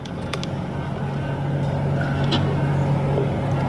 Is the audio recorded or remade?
recorded